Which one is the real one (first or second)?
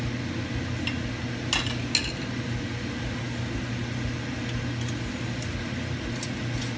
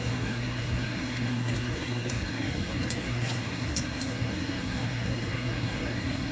first